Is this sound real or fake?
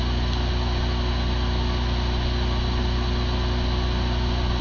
real